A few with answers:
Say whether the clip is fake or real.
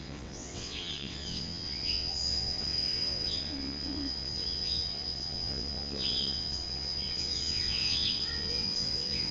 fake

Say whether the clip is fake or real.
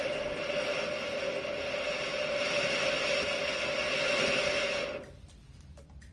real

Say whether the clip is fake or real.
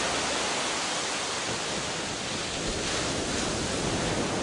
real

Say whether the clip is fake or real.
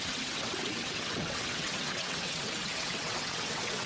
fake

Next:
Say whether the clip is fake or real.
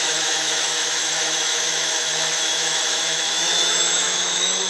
fake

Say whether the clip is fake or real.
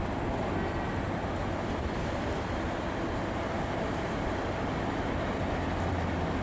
real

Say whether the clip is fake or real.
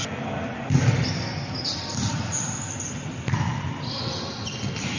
real